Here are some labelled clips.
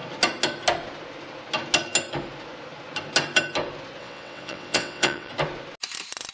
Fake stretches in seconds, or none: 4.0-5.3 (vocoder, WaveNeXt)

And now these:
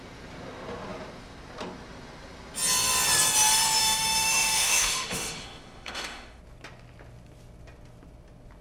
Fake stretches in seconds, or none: 3.8-6.4 (autoencoder, DAC-VAE)

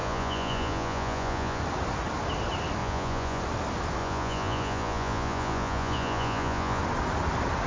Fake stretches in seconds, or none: 0.0-1.6 (vocoder, Vocos); 2.8-3.4; 4.0-6.8